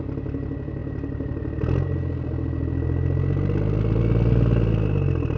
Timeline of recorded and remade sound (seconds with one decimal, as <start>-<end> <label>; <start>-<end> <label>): 0.0-5.4 recorded